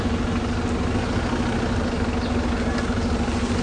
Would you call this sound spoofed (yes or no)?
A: no